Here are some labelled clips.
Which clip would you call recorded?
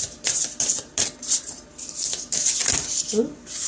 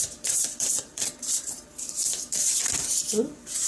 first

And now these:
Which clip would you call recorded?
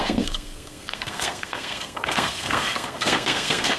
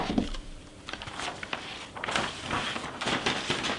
second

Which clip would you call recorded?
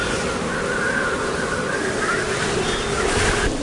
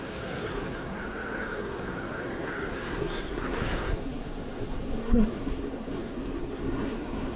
first